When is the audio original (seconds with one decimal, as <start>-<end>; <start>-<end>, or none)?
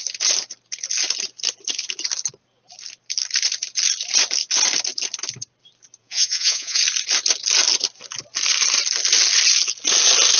0.0-6.0; 6.8-10.4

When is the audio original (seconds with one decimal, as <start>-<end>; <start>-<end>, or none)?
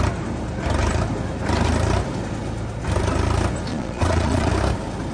0.0-3.7; 4.5-5.1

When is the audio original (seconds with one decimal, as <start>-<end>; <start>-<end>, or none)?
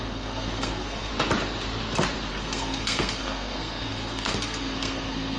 1.1-2.3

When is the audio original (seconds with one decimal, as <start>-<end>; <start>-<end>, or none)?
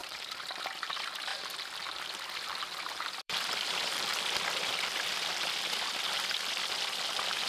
1.3-2.0; 4.1-6.3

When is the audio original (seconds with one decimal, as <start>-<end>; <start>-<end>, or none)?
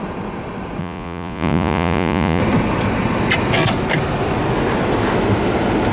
0.0-0.8; 2.4-5.9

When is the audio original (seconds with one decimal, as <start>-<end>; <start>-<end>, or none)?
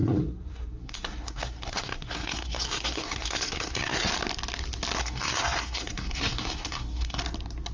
4.1-5.0; 7.2-7.7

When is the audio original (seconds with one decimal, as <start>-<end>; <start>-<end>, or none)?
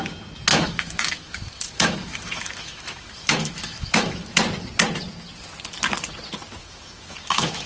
0.0-0.5; 4.3-6.6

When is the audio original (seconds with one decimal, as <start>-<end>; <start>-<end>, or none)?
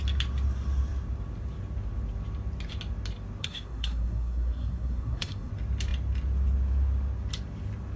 0.0-3.4; 5.5-8.0